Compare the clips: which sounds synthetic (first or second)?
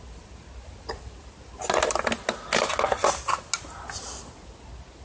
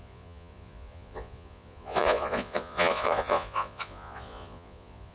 second